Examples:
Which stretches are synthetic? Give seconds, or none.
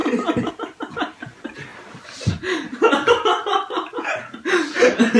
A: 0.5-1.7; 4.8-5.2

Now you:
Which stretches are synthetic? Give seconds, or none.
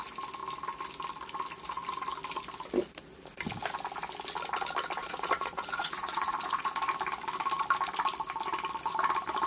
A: 5.0-6.7